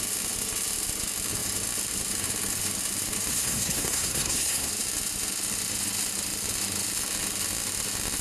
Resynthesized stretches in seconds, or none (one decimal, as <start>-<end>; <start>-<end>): 3.3-4.7